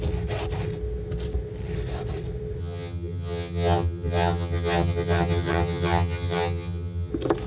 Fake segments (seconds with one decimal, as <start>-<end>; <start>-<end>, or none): 2.6-7.1